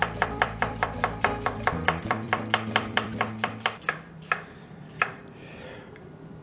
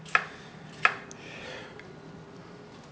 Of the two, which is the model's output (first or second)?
first